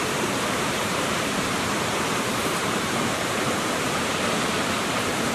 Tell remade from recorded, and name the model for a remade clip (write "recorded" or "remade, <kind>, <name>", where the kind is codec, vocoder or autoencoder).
remade, vocoder, BigVGAN v2